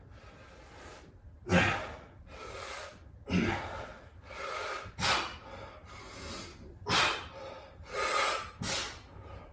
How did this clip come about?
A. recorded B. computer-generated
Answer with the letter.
A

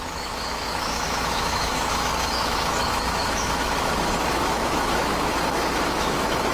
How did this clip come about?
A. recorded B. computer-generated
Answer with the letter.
B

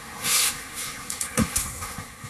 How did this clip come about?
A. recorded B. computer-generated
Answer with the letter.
B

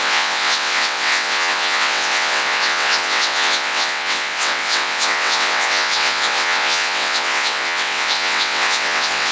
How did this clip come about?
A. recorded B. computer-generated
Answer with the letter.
B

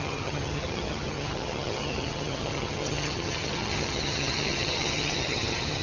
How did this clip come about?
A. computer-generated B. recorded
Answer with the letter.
A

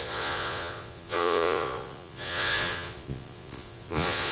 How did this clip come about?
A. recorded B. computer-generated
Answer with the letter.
B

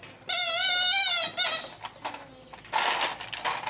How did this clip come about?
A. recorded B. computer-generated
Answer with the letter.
A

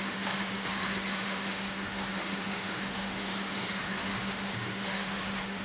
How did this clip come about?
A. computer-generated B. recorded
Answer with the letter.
A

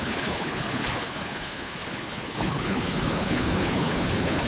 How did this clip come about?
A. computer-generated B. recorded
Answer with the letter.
A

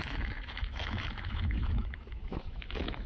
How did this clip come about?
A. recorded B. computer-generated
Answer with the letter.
B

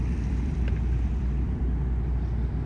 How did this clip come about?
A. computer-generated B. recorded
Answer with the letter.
A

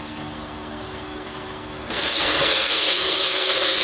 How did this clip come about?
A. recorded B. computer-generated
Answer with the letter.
B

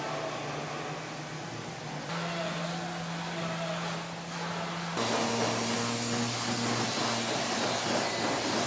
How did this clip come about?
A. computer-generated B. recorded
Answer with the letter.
B